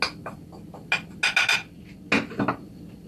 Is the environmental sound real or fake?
real